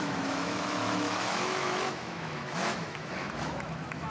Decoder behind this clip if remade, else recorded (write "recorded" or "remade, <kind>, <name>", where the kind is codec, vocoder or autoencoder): remade, autoencoder, DAC-VAE